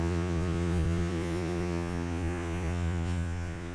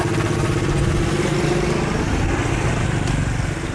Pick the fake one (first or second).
first